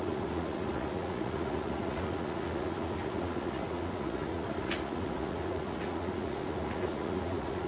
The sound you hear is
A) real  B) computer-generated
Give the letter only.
B